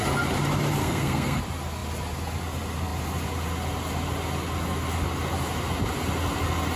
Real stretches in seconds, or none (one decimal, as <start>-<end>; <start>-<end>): 0.0-0.8; 1.4-6.8